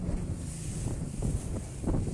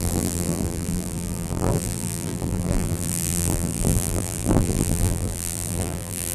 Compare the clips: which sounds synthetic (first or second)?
second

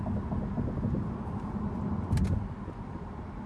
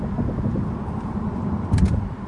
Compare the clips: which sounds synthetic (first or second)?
second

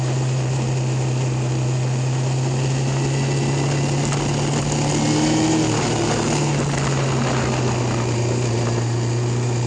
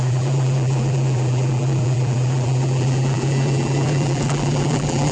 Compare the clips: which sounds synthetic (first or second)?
second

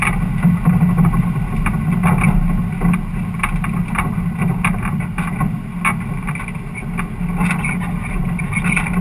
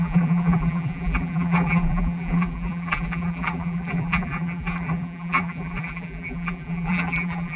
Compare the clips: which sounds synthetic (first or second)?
second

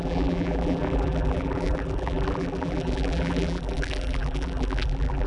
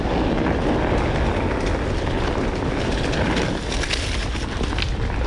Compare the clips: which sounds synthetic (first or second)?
first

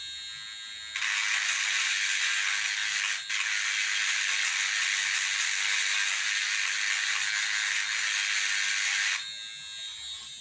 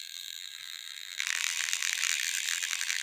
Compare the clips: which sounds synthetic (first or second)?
second